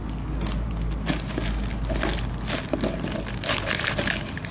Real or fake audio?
real